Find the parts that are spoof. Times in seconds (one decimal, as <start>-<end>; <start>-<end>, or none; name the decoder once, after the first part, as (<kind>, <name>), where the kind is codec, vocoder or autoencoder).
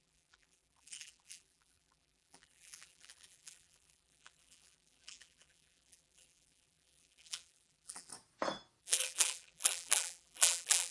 0.0-8.1 (vocoder, BigVGAN v2); 8.8-10.9